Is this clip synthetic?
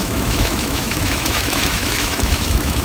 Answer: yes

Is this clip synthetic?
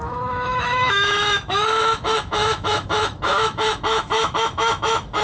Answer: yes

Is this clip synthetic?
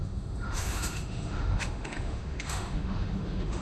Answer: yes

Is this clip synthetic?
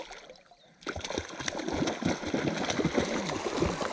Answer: no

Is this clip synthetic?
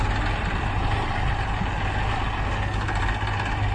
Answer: no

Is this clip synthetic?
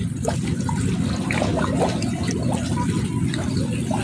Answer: no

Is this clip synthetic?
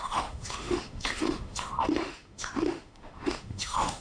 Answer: yes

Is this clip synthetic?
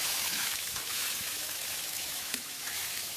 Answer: yes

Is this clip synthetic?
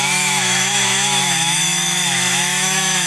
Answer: yes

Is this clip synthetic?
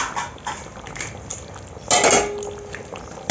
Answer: no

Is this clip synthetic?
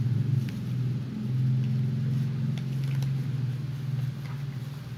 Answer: no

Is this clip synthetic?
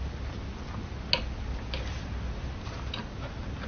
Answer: no